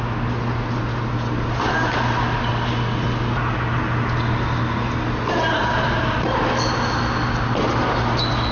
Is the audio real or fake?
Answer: real